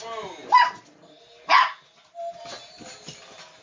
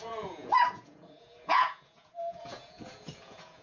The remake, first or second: second